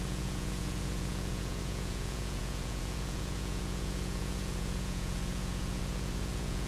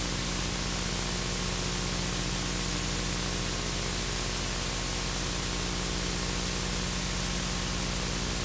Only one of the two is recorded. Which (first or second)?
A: second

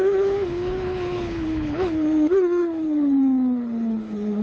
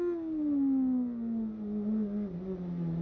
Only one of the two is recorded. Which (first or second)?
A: second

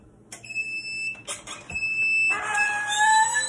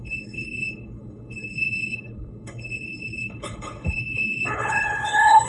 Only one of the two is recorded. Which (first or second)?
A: first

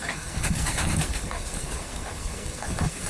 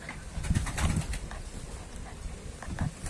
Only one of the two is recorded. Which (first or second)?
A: second